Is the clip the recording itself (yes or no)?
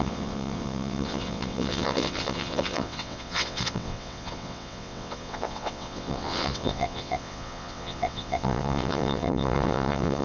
no